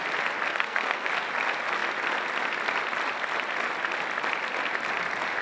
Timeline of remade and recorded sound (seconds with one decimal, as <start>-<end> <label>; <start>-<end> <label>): 0.0-0.5 recorded; 0.5-1.1 remade; 1.1-5.4 recorded